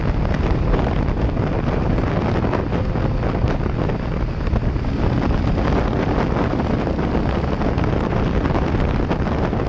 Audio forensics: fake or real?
real